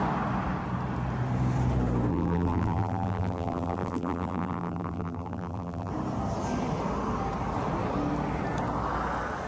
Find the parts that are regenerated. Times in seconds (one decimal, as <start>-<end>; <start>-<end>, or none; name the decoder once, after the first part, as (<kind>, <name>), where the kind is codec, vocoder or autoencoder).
2.1-5.9 (vocoder, BigVGAN v2)